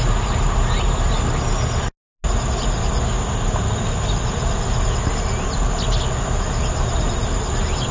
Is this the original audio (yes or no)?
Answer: yes